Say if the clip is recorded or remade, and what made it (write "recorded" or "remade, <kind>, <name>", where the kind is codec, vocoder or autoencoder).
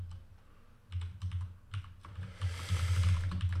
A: recorded